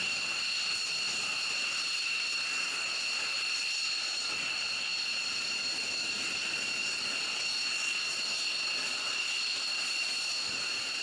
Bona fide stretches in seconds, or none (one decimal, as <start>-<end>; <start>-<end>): 0.0-11.0